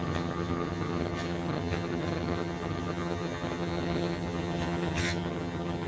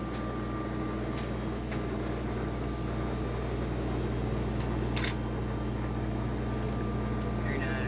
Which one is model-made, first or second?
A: first